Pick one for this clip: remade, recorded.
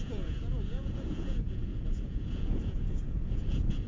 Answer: remade